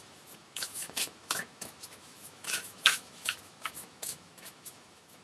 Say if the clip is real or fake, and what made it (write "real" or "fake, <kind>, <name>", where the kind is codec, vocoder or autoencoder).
fake, autoencoder, DAC-VAE